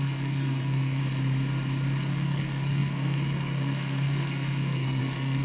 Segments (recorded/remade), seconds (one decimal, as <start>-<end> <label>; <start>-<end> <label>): 0.0-1.0 remade; 1.0-2.1 recorded; 2.1-5.4 remade